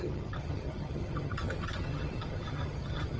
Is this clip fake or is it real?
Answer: fake